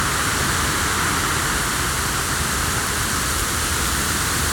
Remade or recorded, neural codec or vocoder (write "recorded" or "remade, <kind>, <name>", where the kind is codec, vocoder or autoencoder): recorded